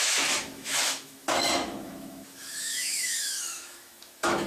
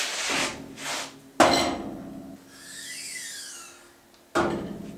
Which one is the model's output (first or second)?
first